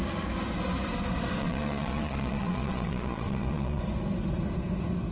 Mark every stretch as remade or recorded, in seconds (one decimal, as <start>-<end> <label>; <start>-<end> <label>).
0.0-1.4 recorded; 1.4-3.8 remade; 3.8-5.1 recorded